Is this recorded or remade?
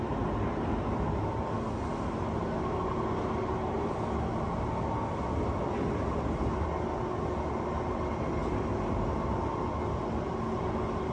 recorded